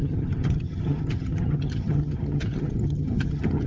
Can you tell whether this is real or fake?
fake